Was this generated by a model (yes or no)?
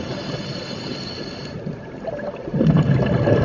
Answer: no